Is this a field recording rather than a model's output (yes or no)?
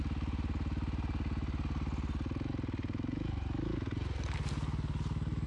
yes